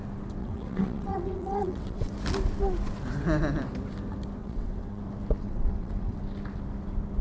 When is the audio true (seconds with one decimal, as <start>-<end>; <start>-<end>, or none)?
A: 0.0-0.4; 2.1-4.4; 5.0-5.4; 6.2-7.2